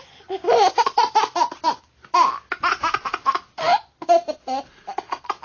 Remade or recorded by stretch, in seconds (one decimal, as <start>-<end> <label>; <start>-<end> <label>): 0.0-1.4 remade; 1.4-3.0 recorded; 3.0-5.4 remade